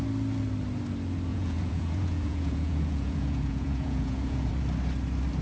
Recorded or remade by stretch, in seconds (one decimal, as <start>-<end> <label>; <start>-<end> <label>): 0.0-1.3 recorded; 1.3-4.5 remade; 4.5-5.4 recorded